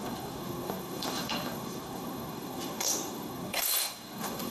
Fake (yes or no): yes